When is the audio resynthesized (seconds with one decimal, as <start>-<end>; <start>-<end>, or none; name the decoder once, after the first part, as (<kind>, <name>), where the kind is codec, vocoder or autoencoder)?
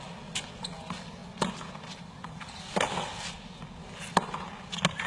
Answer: none